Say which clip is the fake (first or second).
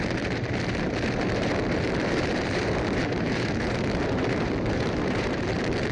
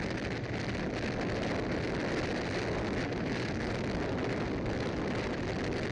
first